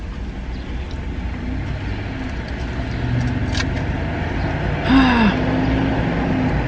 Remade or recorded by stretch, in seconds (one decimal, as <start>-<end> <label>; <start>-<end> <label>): 0.0-6.7 recorded